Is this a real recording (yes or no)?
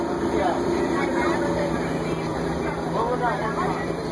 no